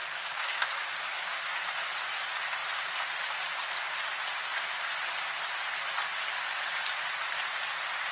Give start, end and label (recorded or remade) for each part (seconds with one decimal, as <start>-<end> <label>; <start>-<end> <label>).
0.0-1.6 remade; 1.6-8.1 recorded